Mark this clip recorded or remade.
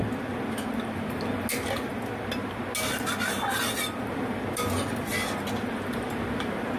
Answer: recorded